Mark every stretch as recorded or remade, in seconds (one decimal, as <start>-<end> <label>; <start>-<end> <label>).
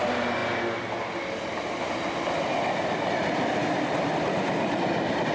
0.0-5.3 recorded